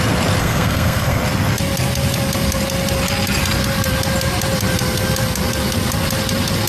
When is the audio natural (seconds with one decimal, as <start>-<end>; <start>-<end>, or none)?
0.0-0.4; 1.2-6.7